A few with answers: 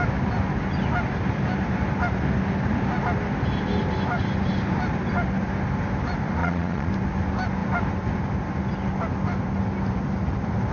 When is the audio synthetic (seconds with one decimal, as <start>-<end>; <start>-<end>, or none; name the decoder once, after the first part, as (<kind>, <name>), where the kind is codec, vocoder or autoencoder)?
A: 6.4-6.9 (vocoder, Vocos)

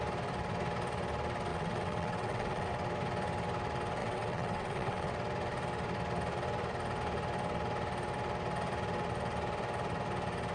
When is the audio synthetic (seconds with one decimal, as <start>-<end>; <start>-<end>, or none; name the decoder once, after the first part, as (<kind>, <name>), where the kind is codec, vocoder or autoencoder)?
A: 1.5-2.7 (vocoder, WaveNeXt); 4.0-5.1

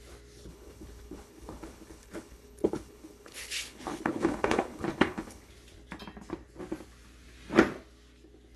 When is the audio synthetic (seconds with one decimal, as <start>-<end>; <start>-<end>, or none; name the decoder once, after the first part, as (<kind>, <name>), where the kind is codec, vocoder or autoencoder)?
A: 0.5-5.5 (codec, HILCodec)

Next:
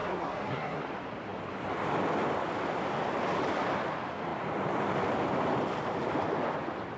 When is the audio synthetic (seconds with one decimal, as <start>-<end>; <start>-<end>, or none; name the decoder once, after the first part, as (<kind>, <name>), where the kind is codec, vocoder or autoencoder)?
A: 0.0-0.8 (codec, SNAC)

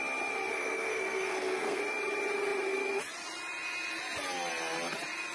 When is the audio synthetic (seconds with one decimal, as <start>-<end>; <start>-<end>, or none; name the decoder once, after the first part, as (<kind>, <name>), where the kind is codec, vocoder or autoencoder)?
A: 0.5-1.8 (codec, SNAC)

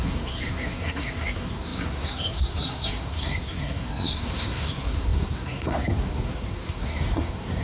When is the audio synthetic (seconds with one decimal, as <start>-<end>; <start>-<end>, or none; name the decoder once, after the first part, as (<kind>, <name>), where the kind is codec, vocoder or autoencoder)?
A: 0.0-7.6 (codec, SNAC)

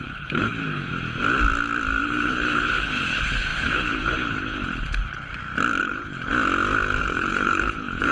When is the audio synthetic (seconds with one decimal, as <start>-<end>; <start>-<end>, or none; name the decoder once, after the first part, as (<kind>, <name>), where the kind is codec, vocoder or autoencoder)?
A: 0.0-0.9 (codec, HILCodec); 2.0-5.3; 5.8-6.3; 7.0-8.1

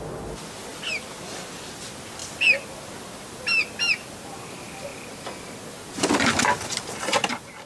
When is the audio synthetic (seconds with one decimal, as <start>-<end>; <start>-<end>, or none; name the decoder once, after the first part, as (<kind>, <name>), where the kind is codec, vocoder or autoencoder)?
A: none